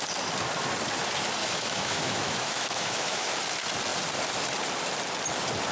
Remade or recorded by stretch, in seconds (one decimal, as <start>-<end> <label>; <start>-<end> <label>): 0.0-1.4 recorded; 1.4-3.3 remade; 3.3-5.7 recorded